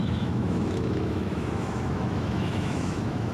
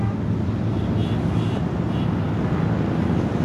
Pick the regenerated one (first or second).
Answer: first